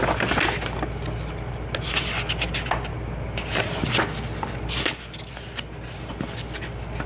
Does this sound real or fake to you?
real